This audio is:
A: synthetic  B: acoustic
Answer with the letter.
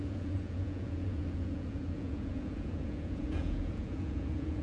A